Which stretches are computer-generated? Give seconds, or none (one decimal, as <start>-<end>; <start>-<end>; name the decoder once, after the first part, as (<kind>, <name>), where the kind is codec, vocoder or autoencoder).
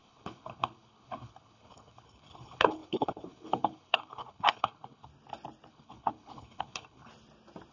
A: 0.0-5.1 (codec, HILCodec); 5.7-7.1